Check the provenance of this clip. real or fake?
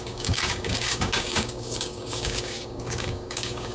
fake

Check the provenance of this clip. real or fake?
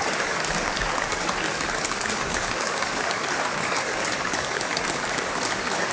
fake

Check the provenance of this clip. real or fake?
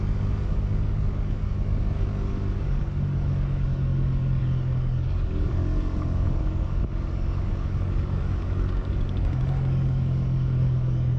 fake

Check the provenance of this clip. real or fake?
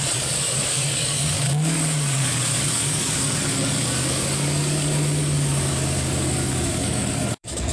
fake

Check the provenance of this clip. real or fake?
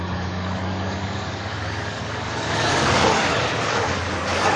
fake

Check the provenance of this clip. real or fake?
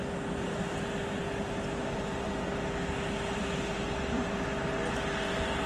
real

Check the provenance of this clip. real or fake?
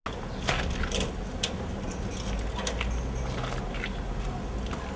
real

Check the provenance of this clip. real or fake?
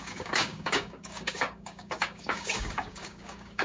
fake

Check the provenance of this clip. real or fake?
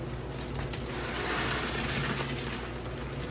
real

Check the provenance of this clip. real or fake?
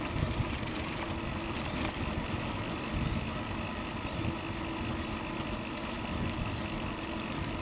real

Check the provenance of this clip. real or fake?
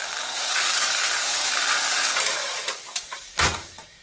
fake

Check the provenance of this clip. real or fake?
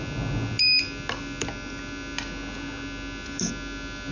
real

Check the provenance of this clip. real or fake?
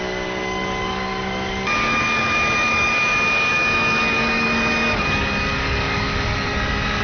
fake